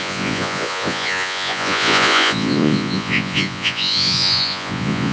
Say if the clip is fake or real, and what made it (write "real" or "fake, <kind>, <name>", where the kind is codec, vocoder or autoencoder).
fake, vocoder, Vocos